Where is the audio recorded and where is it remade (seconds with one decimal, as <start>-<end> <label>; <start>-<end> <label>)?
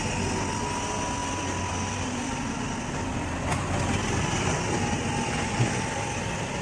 0.0-6.6 recorded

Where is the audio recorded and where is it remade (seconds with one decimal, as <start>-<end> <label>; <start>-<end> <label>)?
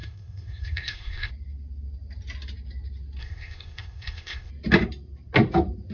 0.0-1.3 remade; 1.3-3.2 recorded; 3.2-4.5 remade; 4.5-5.9 recorded